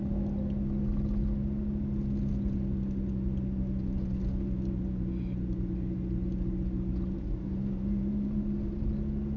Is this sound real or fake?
real